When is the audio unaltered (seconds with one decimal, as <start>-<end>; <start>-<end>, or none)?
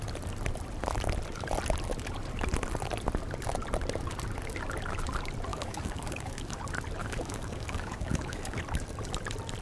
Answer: 0.0-5.5; 6.6-7.0; 8.6-9.6